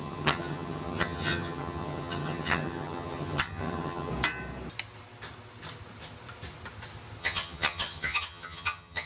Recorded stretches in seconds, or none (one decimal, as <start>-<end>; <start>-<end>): 4.1-7.2

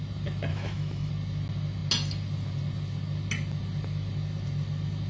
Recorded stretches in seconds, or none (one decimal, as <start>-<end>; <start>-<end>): 0.0-0.5; 1.1-5.1